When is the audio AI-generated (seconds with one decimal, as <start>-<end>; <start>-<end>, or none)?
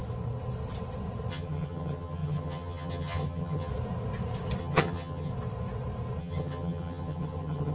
1.3-3.7; 4.6-5.3; 6.2-7.7